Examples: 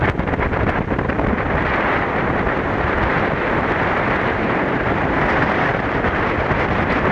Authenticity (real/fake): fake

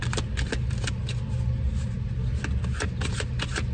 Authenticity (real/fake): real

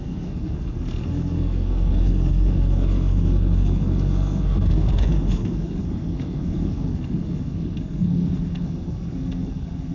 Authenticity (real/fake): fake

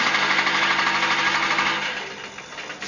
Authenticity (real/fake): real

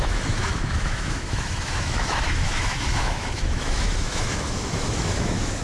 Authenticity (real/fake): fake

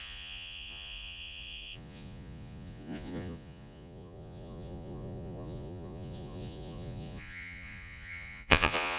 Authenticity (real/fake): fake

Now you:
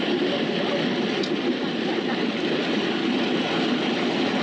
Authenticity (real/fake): real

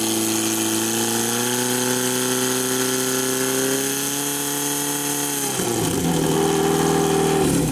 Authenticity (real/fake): real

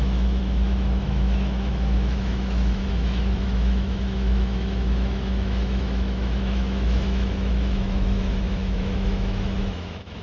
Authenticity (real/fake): fake